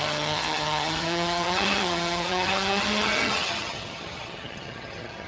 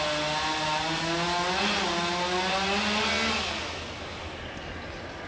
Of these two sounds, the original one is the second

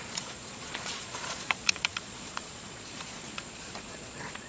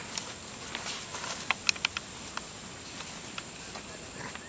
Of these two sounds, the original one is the second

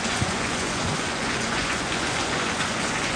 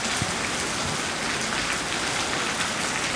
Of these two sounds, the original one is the second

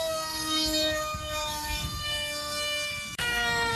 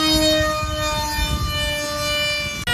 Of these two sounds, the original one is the second